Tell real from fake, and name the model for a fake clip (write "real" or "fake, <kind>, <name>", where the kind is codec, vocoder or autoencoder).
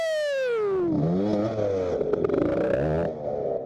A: real